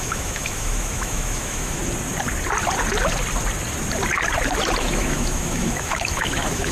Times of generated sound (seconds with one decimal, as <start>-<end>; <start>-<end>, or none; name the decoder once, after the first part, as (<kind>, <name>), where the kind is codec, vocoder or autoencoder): 0.0-1.8 (autoencoder, DAC-VAE); 4.8-6.7